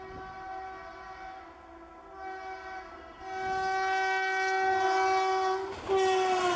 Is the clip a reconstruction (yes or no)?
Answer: no